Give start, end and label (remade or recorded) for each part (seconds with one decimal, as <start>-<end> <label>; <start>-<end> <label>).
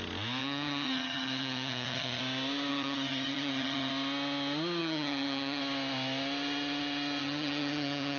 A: 0.0-0.4 recorded; 0.4-2.2 remade; 2.2-2.7 recorded; 2.7-3.9 remade; 3.9-4.8 recorded; 4.8-5.6 remade; 5.6-7.2 recorded; 7.2-8.2 remade